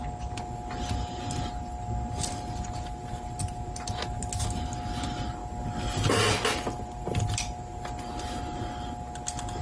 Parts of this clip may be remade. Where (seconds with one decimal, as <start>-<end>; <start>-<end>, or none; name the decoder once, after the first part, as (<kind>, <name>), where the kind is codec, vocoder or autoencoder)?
none